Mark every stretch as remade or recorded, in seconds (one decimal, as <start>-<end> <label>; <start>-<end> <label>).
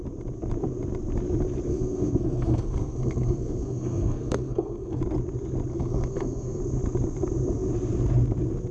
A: 0.0-1.7 recorded; 1.7-5.0 remade; 5.0-5.7 recorded; 5.7-6.6 remade; 6.6-8.7 recorded